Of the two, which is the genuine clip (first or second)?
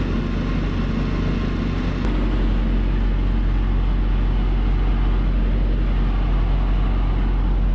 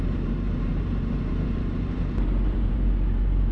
first